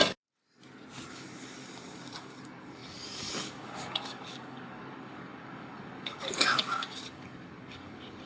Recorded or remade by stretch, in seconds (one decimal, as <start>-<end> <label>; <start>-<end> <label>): 0.0-1.1 recorded; 1.1-8.3 remade